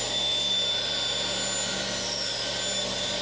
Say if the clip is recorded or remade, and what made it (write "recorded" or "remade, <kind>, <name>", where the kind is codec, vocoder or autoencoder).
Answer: recorded